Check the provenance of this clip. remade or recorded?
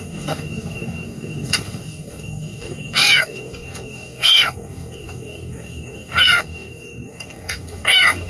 remade